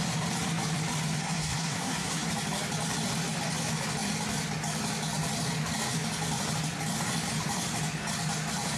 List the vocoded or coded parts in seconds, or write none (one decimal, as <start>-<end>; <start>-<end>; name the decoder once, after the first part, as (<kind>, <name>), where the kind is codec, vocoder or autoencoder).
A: 1.2-2.3 (codec, SNAC)